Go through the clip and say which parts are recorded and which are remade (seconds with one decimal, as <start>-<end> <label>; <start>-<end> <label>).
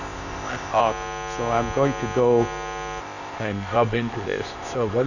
0.0-0.8 remade; 0.8-3.0 recorded; 3.0-5.1 remade